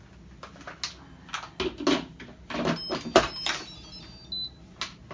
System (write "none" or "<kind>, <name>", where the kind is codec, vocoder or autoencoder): none